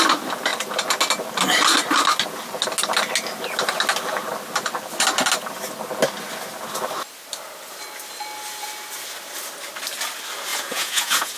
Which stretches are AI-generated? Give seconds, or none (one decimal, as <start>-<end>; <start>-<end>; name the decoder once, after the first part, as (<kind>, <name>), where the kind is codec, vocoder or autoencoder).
10.5-11.4 (vocoder, Vocos)